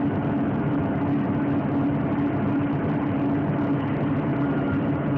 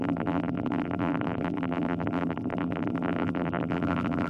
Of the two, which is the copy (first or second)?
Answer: second